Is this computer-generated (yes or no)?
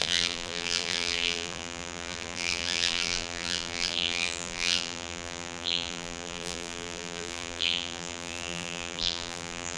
yes